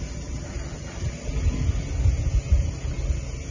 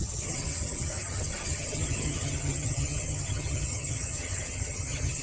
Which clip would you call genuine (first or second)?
first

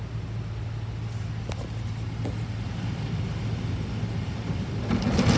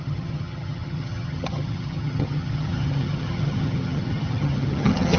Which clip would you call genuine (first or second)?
first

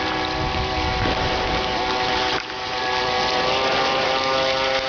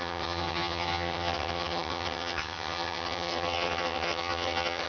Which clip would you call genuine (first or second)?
first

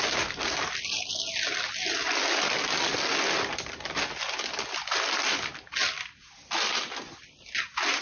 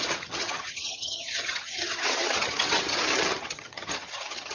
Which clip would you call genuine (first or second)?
first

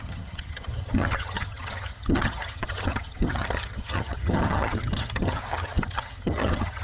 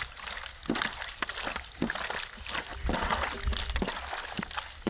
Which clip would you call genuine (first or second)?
second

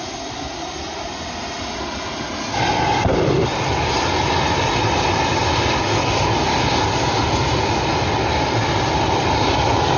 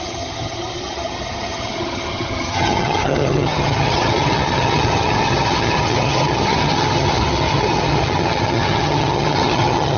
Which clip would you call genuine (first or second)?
first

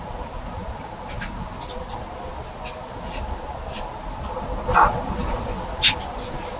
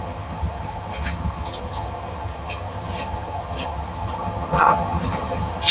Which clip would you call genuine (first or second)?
first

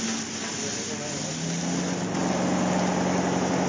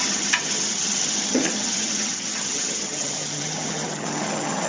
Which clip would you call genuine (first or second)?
first